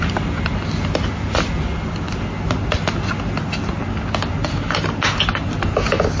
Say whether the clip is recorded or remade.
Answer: recorded